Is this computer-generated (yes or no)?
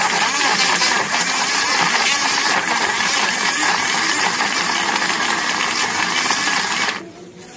no